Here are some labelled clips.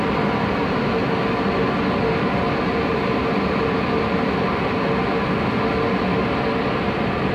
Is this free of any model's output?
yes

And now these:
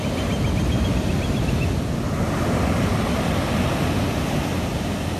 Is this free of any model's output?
yes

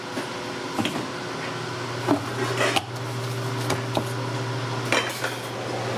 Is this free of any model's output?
yes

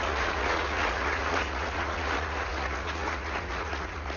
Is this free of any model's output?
no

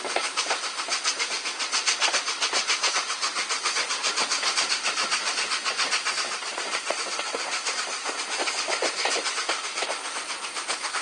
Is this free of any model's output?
yes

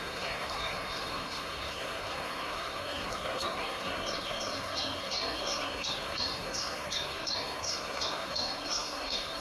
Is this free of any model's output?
no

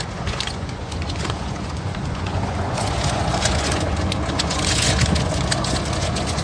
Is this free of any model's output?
no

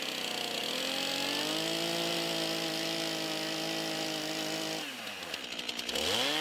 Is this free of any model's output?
yes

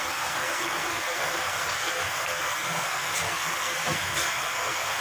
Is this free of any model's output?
no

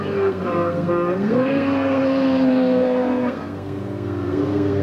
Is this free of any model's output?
no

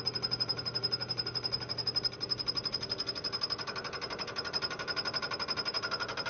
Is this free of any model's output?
yes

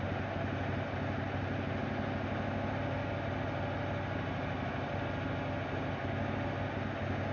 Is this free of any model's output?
yes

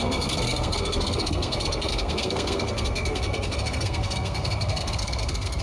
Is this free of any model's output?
no